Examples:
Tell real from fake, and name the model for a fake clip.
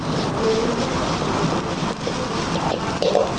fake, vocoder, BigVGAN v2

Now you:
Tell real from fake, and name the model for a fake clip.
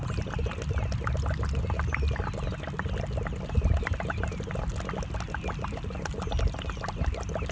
real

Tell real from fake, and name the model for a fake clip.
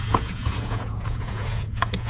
fake, vocoder, Vocos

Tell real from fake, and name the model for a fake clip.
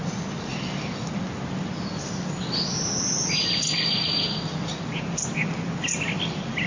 real